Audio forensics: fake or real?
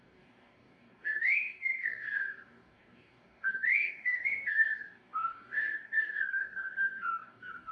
fake